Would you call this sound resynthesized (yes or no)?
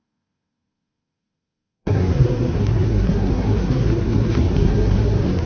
yes